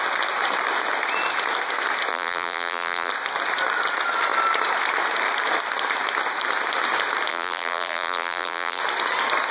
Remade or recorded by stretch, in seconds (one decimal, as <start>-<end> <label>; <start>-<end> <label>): 0.0-2.1 recorded; 2.1-3.1 remade; 3.1-7.3 recorded; 7.3-8.8 remade; 8.8-9.5 recorded